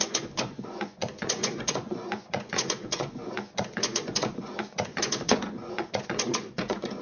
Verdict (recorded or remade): remade